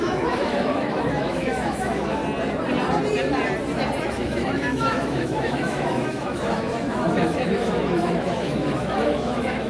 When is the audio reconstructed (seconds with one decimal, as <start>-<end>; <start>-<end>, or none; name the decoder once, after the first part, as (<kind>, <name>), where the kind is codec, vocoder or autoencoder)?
0.0-2.2 (autoencoder, DAC-VAE); 4.0-9.7